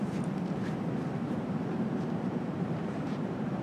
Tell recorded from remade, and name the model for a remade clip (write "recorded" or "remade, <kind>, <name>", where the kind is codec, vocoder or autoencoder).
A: remade, vocoder, BigVGAN v2